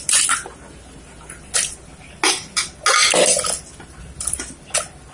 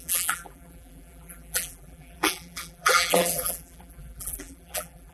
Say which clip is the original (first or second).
first